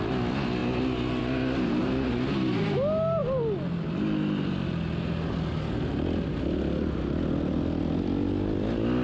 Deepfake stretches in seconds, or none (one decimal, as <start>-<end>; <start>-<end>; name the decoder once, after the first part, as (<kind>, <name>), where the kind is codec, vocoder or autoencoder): none